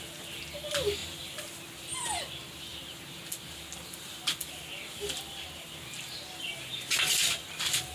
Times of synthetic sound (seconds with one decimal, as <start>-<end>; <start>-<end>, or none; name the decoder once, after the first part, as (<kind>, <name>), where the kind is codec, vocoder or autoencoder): none